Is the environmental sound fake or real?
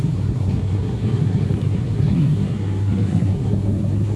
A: fake